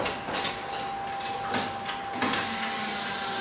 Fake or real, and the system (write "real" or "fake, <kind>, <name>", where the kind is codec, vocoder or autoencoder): real